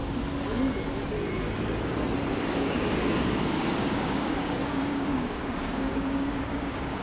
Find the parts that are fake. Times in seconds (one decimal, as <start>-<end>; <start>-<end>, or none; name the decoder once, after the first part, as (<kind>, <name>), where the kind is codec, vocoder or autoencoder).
2.5-7.0 (codec, DAC)